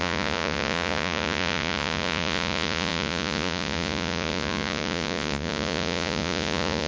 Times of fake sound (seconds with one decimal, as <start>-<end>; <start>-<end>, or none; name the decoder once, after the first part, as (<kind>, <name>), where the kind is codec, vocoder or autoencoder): 0.0-6.9 (vocoder, Vocos)